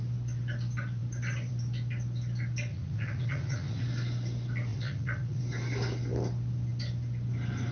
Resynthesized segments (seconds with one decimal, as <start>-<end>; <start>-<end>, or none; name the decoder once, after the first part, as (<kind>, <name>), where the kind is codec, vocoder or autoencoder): 2.7-3.8 (vocoder, Vocos); 4.7-5.4